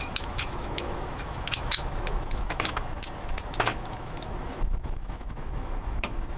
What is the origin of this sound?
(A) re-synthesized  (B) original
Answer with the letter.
A